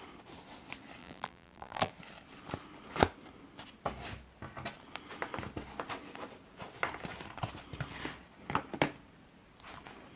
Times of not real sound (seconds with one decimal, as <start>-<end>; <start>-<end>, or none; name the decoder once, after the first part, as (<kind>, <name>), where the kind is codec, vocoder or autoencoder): 1.0-1.9 (vocoder, BigVGAN v2)